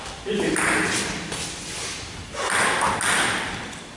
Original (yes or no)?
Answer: yes